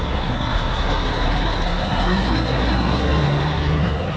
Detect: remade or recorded remade